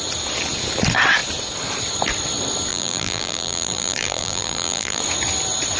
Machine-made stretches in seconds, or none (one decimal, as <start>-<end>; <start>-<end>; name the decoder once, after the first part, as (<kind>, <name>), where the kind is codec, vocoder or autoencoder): 2.7-5.0 (vocoder, BigVGAN v2)